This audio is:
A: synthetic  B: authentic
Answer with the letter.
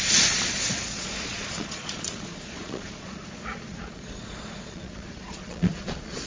A